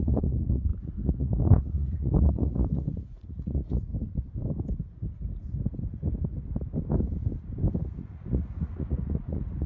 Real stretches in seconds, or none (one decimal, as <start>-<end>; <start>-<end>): 3.9-7.8